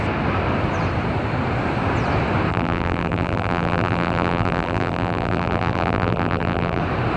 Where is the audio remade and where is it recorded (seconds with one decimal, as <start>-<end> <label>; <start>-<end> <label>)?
0.0-2.5 recorded; 2.5-6.8 remade; 6.8-7.2 recorded